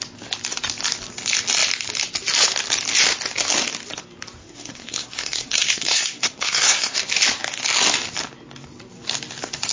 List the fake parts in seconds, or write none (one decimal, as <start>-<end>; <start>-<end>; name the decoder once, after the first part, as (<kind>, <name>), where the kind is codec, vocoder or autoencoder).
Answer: 4.4-7.0 (codec, SNAC)